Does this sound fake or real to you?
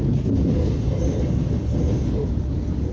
real